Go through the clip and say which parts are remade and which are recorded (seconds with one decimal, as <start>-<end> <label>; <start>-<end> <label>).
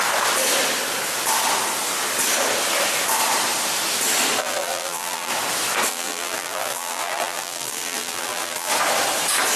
0.0-4.4 recorded; 4.4-5.3 remade; 5.3-5.9 recorded; 5.9-8.7 remade; 8.7-9.6 recorded